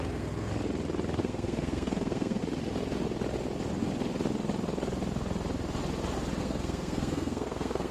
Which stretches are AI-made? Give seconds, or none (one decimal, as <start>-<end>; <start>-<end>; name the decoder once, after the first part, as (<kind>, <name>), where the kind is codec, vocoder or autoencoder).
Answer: 0.0-0.5 (codec, SNAC); 1.2-2.4; 6.4-7.9